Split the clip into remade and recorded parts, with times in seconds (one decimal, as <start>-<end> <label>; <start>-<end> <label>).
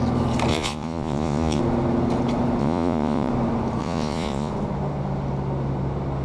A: 0.0-0.5 recorded; 0.5-1.6 remade; 1.6-2.6 recorded; 2.6-3.3 remade; 3.3-3.8 recorded; 3.8-4.5 remade; 4.5-6.2 recorded